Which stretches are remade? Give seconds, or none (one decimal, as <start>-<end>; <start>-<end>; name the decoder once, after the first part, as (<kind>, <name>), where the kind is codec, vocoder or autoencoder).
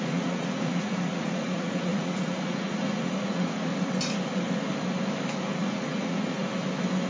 0.0-3.7 (vocoder, Vocos); 5.6-6.4